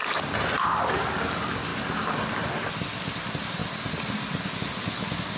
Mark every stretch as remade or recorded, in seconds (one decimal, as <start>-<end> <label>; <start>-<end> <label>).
0.0-5.4 recorded